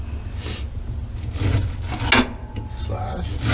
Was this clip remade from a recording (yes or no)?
no